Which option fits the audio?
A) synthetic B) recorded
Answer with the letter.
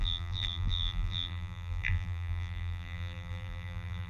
A